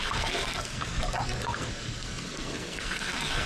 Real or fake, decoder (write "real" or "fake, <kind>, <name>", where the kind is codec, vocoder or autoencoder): fake, codec, SNAC